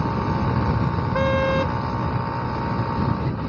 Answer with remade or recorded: recorded